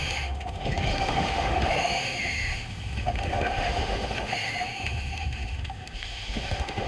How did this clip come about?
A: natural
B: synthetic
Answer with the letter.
B